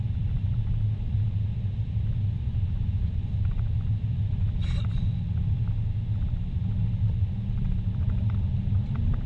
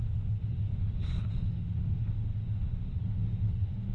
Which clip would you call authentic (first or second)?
first